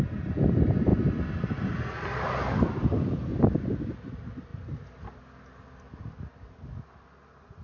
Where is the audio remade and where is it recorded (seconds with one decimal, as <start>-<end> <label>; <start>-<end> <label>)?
0.0-7.6 recorded